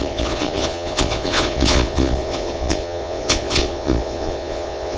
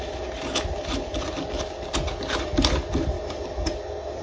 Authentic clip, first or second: second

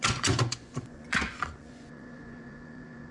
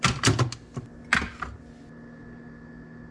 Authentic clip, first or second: second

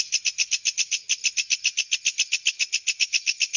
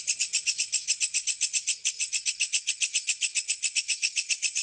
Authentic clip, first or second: first